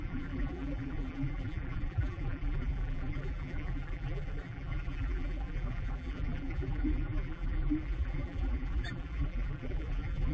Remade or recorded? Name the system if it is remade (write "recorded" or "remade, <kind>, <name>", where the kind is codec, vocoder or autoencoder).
remade, vocoder, BigVGAN v2